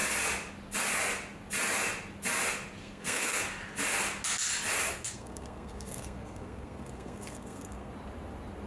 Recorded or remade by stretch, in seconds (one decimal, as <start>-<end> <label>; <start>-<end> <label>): 0.0-2.8 recorded; 2.8-3.4 remade; 3.4-4.9 recorded; 4.9-7.9 remade; 7.9-8.7 recorded